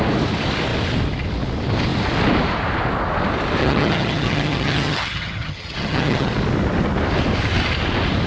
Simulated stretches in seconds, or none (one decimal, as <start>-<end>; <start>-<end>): 3.6-6.3